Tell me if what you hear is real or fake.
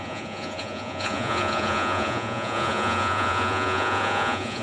fake